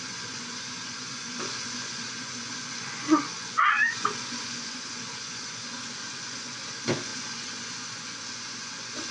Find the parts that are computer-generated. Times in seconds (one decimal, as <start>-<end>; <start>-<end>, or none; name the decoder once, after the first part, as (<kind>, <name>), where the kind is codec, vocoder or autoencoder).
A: 0.0-9.1 (vocoder, Vocos)